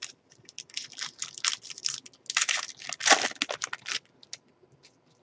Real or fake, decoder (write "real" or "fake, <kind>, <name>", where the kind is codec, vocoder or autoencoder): real